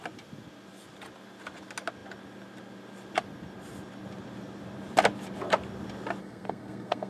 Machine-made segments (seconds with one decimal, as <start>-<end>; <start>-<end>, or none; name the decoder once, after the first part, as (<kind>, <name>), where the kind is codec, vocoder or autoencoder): 6.2-7.1 (codec, SNAC)